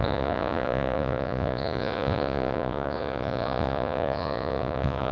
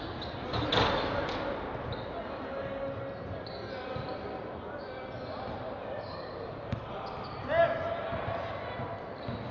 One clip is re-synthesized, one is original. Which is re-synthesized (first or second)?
first